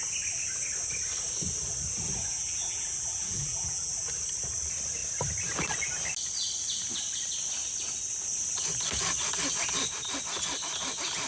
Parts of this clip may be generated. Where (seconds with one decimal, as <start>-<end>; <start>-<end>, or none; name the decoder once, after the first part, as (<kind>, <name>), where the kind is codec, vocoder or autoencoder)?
2.3-3.9 (vocoder, BigVGAN v2)

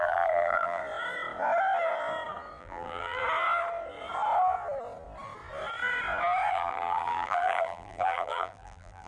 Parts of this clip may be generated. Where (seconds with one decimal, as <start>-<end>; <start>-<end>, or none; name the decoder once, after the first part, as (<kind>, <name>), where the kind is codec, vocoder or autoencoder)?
0.0-0.8 (vocoder, BigVGAN v2); 2.6-3.2; 6.5-9.1

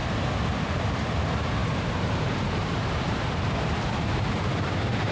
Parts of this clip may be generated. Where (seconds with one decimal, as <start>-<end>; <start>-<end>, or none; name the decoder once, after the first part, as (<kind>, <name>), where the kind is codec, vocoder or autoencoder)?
1.1-5.1 (vocoder, BigVGAN v2)

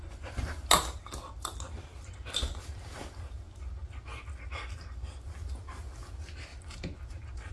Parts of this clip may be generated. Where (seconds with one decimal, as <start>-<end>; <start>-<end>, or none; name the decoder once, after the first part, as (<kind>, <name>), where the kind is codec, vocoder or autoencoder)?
6.5-7.5 (vocoder, BigVGAN v2)

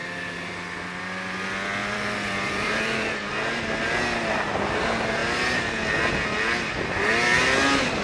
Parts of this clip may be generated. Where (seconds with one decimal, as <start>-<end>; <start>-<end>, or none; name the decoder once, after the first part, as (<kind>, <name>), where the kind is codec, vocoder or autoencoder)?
1.8-3.3 (vocoder, BigVGAN v2); 5.2-5.7

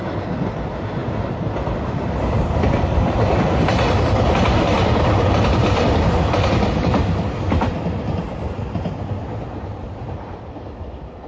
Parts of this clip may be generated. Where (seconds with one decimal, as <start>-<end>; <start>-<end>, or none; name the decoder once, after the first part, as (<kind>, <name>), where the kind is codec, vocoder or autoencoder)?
0.0-1.0 (vocoder, BigVGAN v2); 2.6-11.3

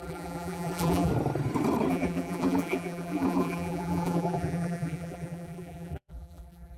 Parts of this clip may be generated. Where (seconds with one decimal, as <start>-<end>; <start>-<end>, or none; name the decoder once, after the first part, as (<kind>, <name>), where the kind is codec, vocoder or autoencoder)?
0.0-1.1 (vocoder, BigVGAN v2); 1.9-6.8

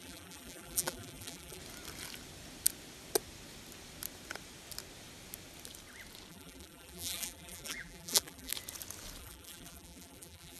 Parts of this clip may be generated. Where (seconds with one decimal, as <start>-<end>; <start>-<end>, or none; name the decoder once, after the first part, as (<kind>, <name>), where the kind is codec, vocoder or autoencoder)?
0.0-1.6 (vocoder, BigVGAN v2); 6.3-8.5; 9.2-10.6